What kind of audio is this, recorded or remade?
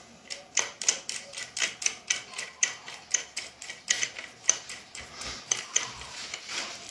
remade